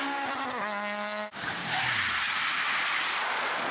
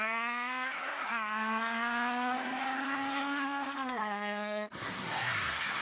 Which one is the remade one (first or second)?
second